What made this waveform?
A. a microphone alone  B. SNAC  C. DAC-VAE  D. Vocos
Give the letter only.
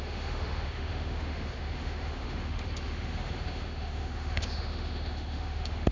C